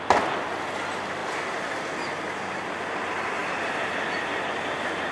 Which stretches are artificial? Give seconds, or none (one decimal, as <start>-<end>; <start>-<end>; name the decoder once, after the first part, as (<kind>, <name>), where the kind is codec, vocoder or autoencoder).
3.4-5.1 (vocoder, BigVGAN v2)